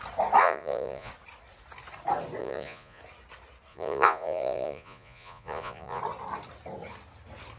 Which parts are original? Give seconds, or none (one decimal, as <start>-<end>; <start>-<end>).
0.0-0.4; 1.1-2.4; 3.0-3.7; 6.0-7.6